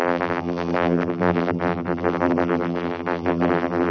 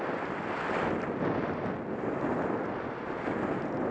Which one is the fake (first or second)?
first